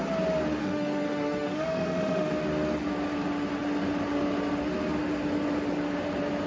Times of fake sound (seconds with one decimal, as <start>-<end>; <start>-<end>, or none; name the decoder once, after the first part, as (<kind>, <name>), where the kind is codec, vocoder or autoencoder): 0.6-2.3 (autoencoder, DAC-VAE)

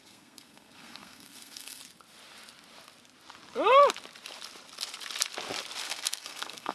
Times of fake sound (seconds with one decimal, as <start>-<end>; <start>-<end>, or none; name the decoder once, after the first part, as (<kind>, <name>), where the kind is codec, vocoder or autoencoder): 0.0-1.8 (codec, SNAC); 5.8-6.7

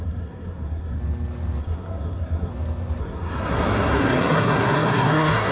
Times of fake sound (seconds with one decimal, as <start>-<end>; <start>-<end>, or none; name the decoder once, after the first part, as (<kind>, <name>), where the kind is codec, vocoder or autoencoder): 0.0-1.0 (codec, SNAC); 1.6-2.5; 3.0-5.5

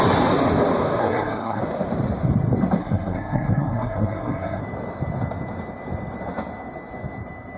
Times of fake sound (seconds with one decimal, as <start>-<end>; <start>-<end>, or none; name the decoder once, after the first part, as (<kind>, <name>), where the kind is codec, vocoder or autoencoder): 1.0-1.6 (codec, SNAC); 2.8-4.6